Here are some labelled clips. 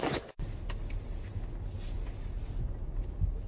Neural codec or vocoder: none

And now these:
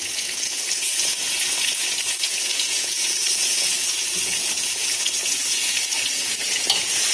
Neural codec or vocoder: vocoder, Vocos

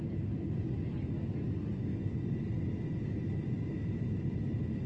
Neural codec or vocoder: none